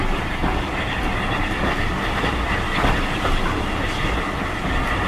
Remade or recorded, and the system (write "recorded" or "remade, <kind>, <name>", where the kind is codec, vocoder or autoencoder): recorded